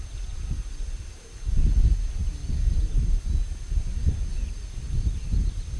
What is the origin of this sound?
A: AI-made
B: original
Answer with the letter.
B